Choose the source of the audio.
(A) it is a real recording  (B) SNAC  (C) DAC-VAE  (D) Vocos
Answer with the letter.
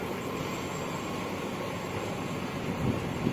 A